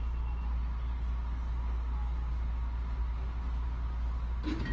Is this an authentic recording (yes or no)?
yes